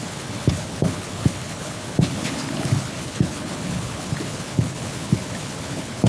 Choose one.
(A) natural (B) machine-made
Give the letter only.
B